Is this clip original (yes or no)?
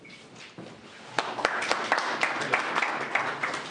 yes